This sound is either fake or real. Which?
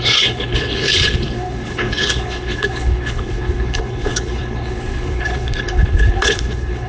fake